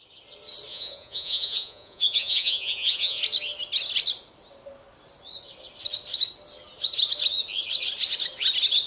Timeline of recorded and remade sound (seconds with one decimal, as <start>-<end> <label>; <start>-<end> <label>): 0.0-0.7 recorded; 0.7-3.2 remade; 3.2-8.9 recorded